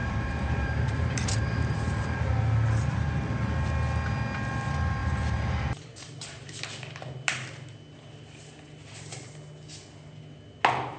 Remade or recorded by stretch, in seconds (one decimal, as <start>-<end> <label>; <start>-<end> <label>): 0.0-2.3 remade; 2.3-5.0 recorded; 5.0-6.5 remade; 6.5-11.0 recorded